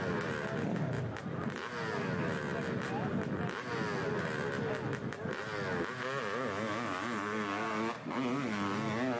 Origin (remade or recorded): recorded